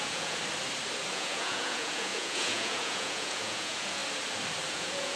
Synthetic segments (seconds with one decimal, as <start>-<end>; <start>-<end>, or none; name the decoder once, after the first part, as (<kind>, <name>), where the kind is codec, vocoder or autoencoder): 0.0-0.4 (vocoder, Vocos); 1.1-4.0; 4.7-5.2